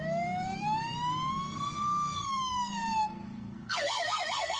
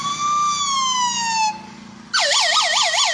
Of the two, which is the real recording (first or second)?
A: second